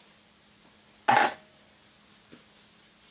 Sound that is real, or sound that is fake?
real